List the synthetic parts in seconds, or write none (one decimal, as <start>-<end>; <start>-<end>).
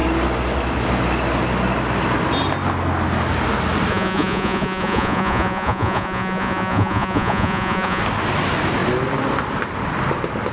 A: 3.9-8.0